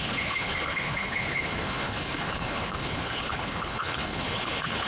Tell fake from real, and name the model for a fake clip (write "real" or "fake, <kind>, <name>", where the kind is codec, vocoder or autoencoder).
fake, codec, HILCodec